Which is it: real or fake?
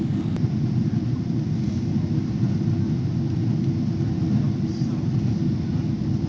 real